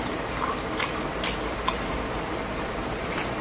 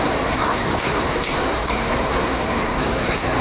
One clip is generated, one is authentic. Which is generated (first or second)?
second